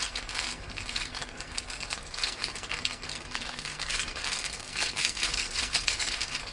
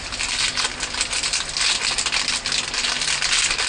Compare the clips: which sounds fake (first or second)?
first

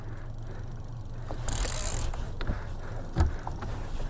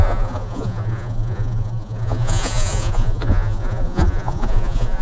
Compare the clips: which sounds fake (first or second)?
second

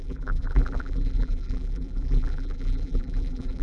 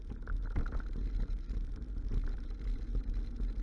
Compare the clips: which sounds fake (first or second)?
first